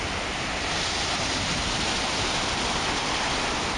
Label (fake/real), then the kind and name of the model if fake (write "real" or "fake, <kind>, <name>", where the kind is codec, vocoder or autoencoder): real